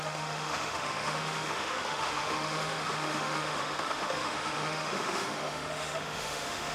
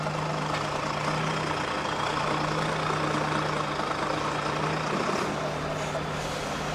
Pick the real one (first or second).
second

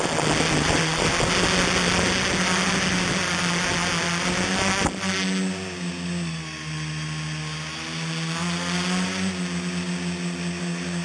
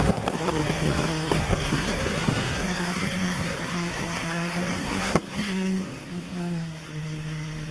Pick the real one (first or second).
first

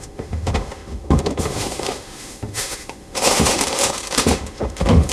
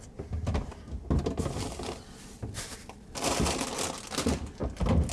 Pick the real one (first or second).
second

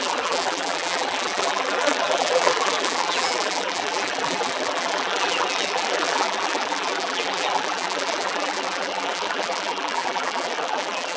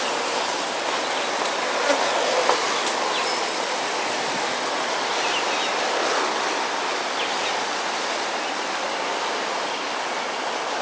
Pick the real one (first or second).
second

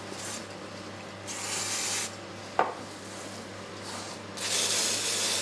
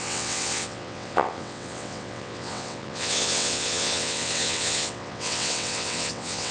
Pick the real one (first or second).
first